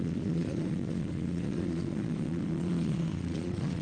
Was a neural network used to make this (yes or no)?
yes